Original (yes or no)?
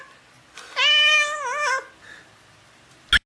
yes